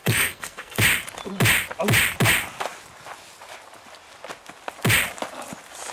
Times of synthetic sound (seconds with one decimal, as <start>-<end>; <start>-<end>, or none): 0.0-0.8